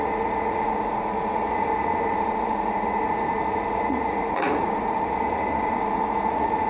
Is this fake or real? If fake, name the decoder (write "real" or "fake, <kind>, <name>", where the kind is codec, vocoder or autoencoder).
fake, vocoder, Vocos